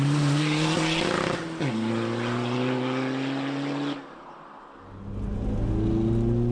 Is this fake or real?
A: real